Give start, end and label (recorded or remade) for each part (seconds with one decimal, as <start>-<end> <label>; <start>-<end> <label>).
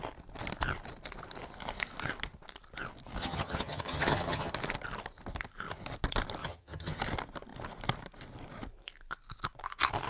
0.0-3.2 recorded; 3.2-4.5 remade; 4.5-6.4 recorded; 6.4-7.0 remade; 7.0-10.1 recorded